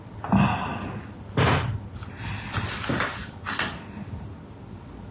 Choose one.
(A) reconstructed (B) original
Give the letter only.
B